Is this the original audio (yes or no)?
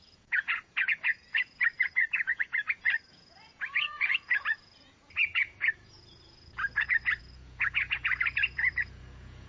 no